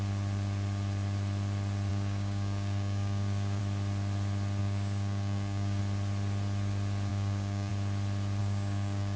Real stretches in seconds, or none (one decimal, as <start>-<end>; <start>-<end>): 0.0-1.9; 3.6-4.6; 5.8-7.1; 7.7-8.4